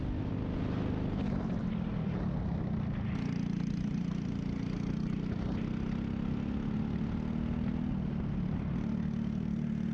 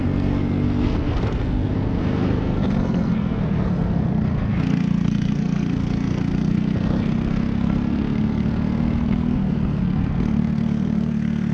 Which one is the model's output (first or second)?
second